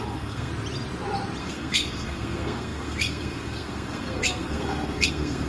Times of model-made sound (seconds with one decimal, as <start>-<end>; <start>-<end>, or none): 0.0-0.5; 1.4-5.5